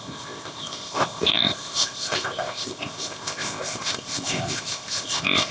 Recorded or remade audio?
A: remade